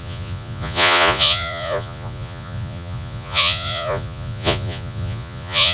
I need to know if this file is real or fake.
fake